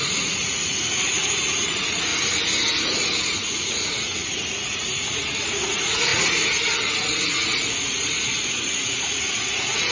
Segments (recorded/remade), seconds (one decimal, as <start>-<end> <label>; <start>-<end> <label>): 0.0-2.1 remade; 2.1-2.8 recorded; 2.8-9.9 remade